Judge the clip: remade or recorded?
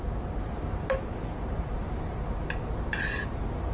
recorded